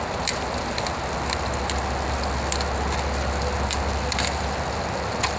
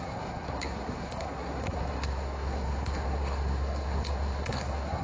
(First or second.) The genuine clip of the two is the first